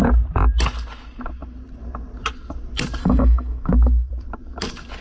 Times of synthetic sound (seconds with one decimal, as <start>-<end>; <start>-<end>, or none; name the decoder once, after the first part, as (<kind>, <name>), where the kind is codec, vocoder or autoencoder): 3.0-4.1 (codec, SNAC)

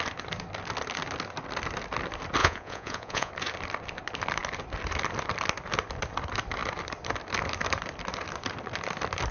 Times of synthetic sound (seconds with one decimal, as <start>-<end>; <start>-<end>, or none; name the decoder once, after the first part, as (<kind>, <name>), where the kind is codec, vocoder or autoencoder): 2.4-3.3 (vocoder, Vocos)